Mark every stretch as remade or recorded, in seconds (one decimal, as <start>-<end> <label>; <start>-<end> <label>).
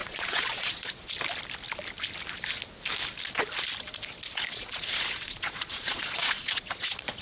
0.0-1.1 remade; 1.1-4.5 recorded; 4.5-7.2 remade